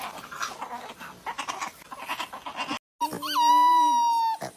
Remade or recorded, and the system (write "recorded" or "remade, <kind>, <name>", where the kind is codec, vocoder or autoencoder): recorded